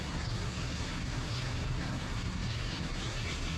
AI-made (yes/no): yes